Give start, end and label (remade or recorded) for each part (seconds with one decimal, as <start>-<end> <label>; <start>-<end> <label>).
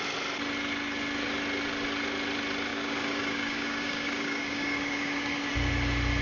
0.0-2.7 recorded; 2.7-5.5 remade; 5.5-6.2 recorded